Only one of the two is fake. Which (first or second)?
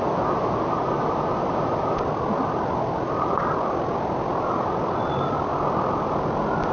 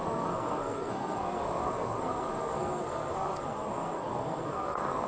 second